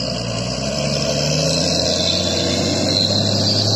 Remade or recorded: recorded